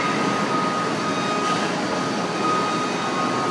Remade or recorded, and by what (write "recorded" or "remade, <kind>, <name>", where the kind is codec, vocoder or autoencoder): recorded